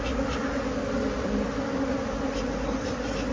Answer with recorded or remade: recorded